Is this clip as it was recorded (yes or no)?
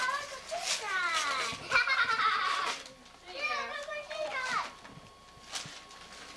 yes